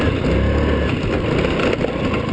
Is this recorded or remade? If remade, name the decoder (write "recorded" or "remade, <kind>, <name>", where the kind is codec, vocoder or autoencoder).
recorded